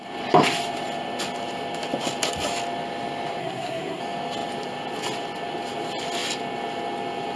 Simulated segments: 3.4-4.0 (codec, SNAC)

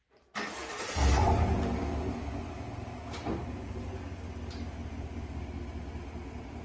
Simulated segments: none

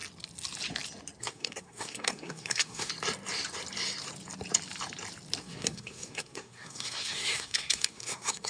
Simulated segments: 1.2-2.9 (codec, SNAC); 5.4-8.5

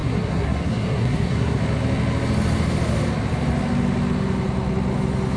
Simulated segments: 0.0-1.6 (codec, SNAC)

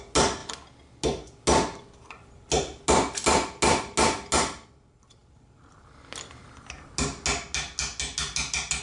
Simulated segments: none